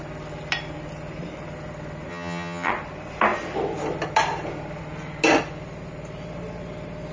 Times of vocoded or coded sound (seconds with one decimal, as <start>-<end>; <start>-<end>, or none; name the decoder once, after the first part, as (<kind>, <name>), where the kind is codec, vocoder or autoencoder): 2.1-2.7 (vocoder, HiFi-GAN)